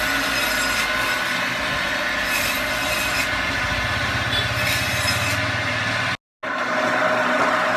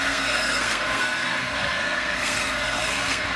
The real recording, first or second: first